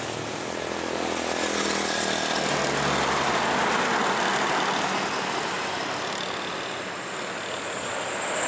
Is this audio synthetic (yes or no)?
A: no